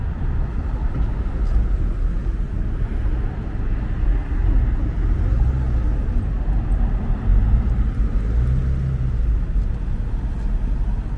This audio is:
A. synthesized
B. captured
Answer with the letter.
B